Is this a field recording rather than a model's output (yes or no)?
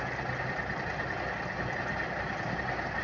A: yes